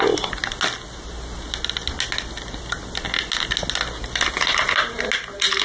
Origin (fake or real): real